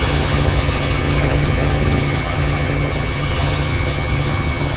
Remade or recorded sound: remade